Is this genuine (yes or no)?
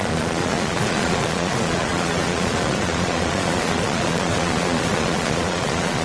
no